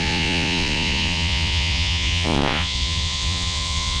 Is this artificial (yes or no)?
yes